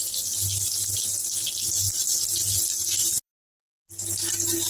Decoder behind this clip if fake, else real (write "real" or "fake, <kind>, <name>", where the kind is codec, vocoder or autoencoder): real